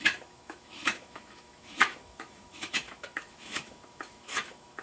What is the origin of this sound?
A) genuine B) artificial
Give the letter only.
B